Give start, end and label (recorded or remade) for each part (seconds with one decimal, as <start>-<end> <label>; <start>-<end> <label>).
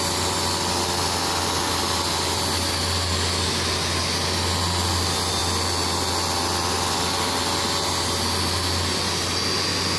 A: 0.0-10.0 recorded